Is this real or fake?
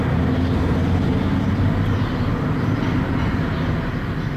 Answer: real